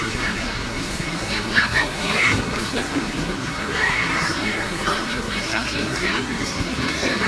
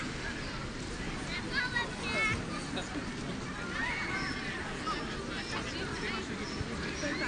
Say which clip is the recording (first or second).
second